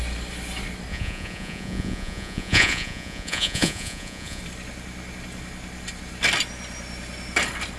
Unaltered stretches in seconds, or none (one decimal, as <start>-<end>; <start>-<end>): 0.0-0.9; 4.4-7.8